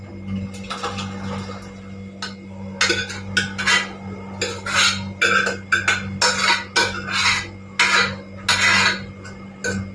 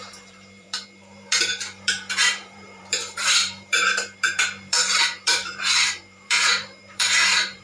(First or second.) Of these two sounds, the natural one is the first